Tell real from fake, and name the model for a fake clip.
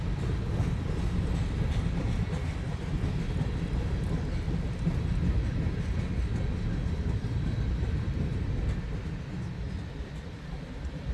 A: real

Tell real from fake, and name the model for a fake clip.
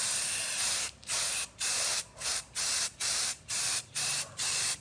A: fake, vocoder, BigVGAN v2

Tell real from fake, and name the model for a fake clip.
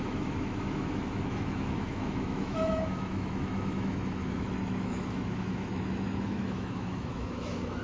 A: fake, autoencoder, DAC-VAE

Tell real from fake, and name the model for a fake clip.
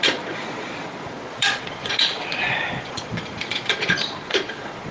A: fake, vocoder, Vocos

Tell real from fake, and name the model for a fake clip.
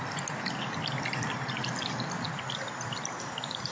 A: real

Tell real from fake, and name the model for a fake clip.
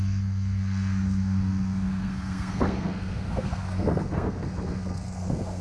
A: fake, codec, SNAC